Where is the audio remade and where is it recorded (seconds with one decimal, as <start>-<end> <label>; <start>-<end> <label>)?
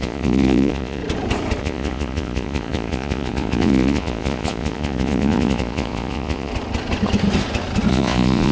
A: 0.0-1.0 remade; 1.0-1.6 recorded; 1.6-6.5 remade; 6.5-7.9 recorded; 7.9-8.5 remade